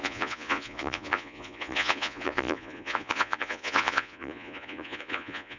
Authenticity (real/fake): fake